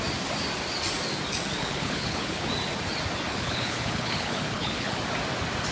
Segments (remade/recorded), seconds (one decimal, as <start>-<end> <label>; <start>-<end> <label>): 0.0-1.6 recorded; 1.6-2.5 remade; 2.5-3.3 recorded; 3.3-5.0 remade; 5.0-5.7 recorded